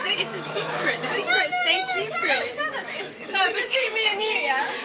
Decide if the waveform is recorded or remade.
remade